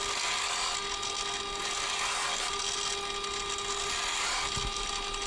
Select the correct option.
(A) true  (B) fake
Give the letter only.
A